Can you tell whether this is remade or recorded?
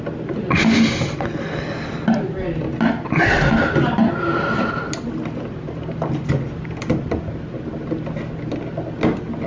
recorded